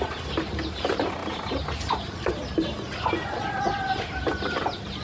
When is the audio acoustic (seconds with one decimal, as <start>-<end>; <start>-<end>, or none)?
0.0-5.0